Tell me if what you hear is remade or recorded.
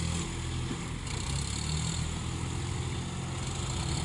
recorded